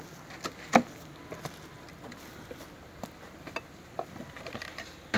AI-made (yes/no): no